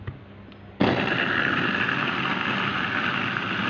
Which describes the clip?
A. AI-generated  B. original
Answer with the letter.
B